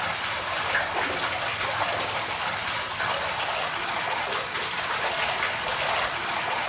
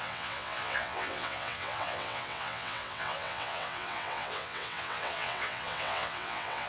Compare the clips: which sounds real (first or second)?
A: first